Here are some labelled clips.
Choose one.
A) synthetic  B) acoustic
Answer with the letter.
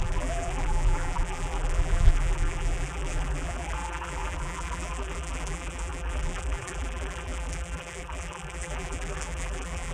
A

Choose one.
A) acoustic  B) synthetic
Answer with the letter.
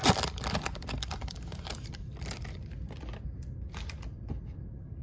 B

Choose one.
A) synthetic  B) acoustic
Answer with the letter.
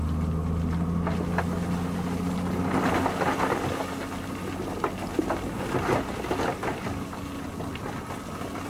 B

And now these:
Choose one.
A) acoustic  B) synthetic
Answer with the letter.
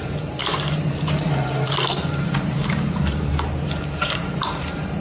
B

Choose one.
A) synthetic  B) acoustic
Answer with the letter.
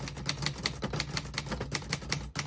B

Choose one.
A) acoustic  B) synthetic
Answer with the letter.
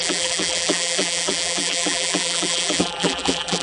B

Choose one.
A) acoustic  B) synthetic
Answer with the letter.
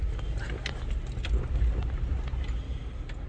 A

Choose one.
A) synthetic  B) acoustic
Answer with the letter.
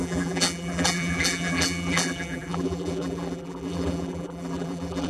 A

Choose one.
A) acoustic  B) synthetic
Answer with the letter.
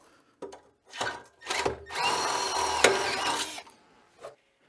A